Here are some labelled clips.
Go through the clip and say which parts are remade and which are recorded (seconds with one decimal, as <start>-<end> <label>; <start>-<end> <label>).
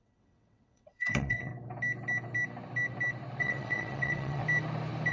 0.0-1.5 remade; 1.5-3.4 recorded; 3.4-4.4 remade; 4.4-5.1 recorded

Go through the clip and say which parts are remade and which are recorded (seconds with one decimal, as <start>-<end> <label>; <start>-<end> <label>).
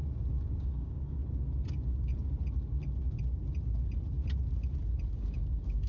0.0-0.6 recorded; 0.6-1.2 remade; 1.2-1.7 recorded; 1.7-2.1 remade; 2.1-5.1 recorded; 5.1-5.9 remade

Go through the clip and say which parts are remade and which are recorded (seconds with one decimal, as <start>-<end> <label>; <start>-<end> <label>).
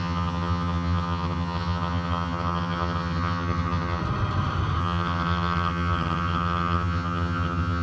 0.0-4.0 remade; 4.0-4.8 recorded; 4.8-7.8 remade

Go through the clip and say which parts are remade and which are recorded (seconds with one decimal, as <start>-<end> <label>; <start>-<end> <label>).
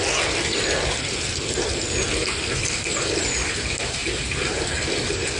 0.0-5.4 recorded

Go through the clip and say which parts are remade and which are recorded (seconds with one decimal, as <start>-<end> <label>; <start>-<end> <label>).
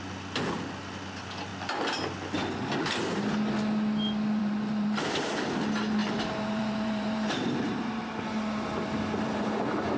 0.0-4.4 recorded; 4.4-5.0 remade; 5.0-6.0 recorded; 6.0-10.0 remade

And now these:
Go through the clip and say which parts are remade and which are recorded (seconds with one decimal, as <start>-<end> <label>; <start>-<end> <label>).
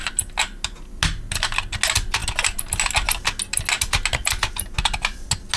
0.0-5.6 recorded